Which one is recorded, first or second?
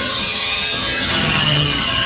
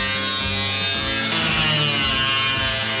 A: second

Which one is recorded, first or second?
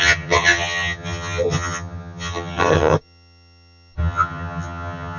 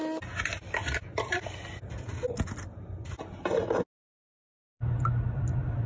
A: second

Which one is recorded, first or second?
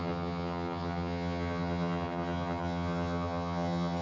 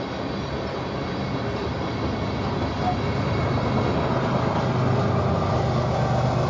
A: second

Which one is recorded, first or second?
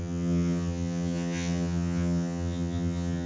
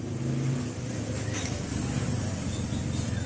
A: second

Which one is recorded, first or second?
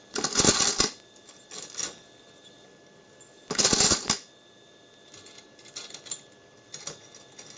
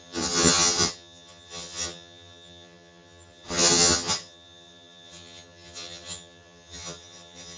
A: first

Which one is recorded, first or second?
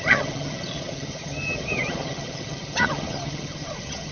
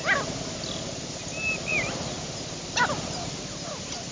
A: second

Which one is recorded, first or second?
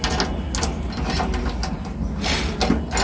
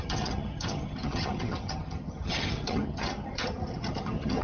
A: first